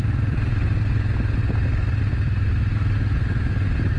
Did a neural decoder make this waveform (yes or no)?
no